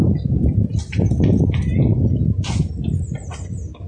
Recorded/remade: recorded